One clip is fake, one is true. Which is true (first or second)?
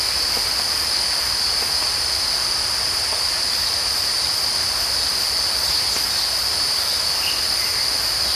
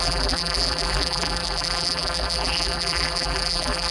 first